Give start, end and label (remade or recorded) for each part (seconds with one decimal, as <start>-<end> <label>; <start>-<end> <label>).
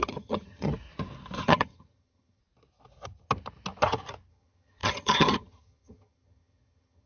0.0-0.7 remade; 0.7-1.4 recorded; 1.4-2.4 remade; 2.4-4.3 recorded; 4.3-7.1 remade